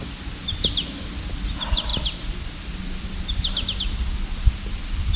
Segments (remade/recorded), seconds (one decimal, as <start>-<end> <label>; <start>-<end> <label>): 0.0-5.2 recorded